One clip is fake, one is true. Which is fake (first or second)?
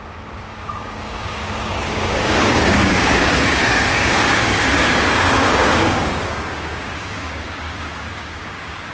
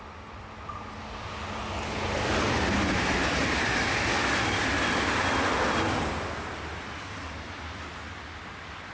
first